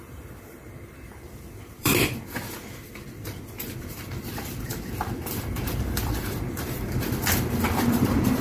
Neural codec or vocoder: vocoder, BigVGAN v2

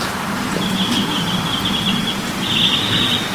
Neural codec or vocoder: none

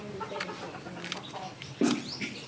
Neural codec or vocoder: none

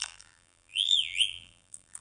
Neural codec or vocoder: vocoder, BigVGAN v2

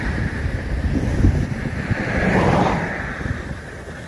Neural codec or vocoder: vocoder, BigVGAN v2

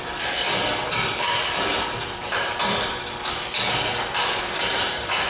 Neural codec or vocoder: vocoder, BigVGAN v2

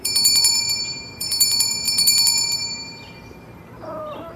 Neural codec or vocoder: vocoder, BigVGAN v2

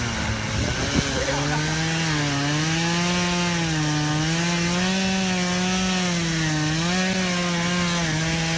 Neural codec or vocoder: none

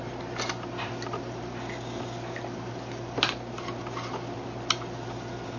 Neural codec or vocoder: none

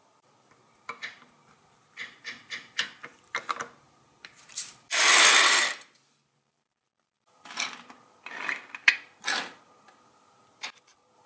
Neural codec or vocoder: vocoder, BigVGAN v2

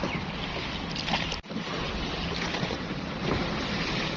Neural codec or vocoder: vocoder, BigVGAN v2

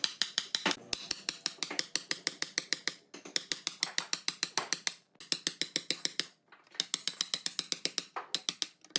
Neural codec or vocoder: none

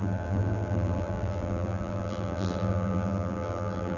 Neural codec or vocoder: vocoder, BigVGAN v2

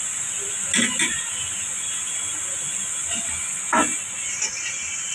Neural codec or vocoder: none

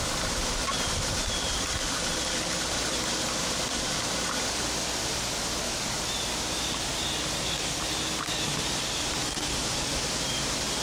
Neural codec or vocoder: none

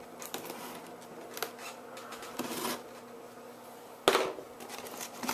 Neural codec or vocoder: none